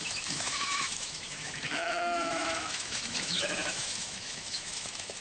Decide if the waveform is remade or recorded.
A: remade